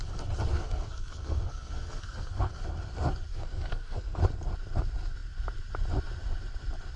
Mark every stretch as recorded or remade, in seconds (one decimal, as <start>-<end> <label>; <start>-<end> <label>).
0.0-0.5 recorded; 0.5-2.5 remade; 2.5-3.3 recorded; 3.3-4.2 remade; 4.2-7.0 recorded